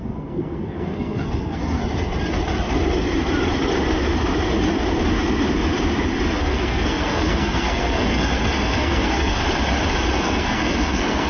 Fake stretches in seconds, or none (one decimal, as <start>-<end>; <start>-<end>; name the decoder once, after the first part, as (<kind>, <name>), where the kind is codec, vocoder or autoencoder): 0.0-1.8 (codec, SNAC); 6.4-9.4; 10.2-11.3